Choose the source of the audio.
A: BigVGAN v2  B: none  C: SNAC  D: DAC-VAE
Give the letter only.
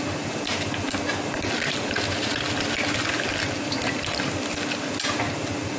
B